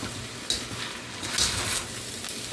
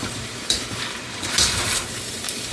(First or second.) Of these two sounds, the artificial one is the second